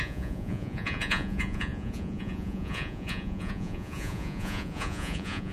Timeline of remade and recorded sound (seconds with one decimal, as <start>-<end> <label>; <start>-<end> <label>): 0.0-5.5 remade

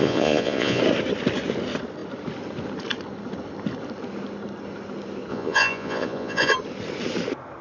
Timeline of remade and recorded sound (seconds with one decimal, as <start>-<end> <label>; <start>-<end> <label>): 0.0-0.8 remade; 0.8-5.3 recorded; 5.3-6.5 remade; 6.5-7.6 recorded